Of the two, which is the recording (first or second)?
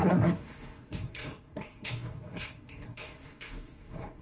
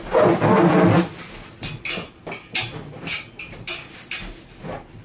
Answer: second